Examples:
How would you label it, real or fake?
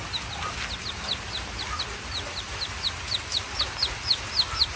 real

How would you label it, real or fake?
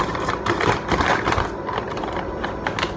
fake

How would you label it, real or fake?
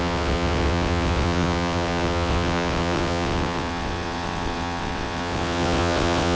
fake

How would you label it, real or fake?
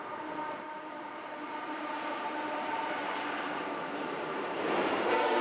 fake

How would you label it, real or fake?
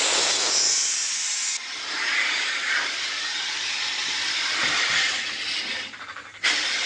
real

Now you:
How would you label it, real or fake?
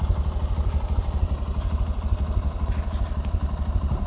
real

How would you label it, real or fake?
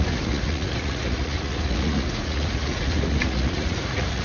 fake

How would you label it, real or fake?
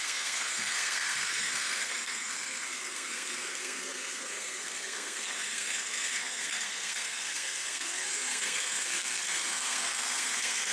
fake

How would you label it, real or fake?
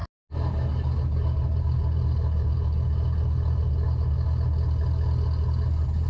real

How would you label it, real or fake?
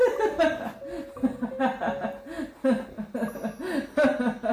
real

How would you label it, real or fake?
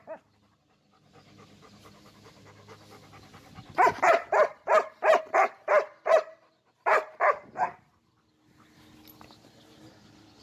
real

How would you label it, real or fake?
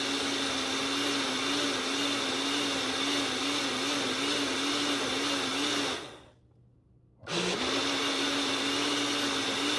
real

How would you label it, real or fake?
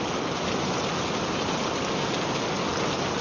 real